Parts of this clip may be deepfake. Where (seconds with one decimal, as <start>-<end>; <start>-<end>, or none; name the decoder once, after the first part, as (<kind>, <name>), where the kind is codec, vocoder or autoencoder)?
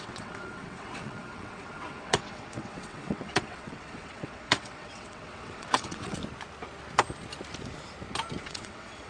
0.0-6.2 (vocoder, WaveNeXt); 8.4-9.1